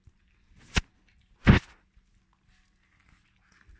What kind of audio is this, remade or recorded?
recorded